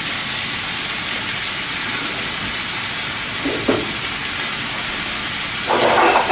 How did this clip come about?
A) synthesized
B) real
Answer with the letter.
B